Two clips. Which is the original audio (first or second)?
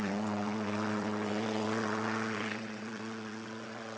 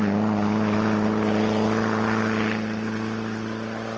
second